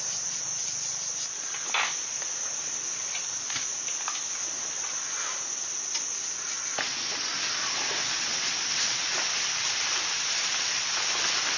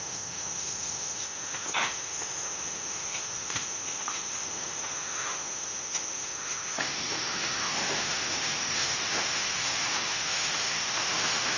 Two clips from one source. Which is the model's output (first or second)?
second